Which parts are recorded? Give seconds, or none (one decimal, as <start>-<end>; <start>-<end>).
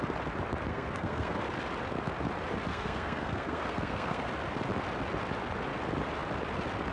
0.0-0.7; 1.4-2.7; 4.3-6.9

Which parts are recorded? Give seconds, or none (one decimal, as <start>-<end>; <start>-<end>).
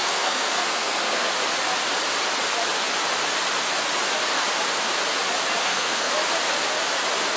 1.3-5.6; 6.1-7.4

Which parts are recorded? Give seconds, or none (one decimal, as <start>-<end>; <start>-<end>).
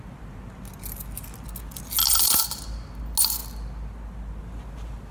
0.0-5.1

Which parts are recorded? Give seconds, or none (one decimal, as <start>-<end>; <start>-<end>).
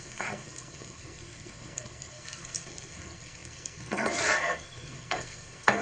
none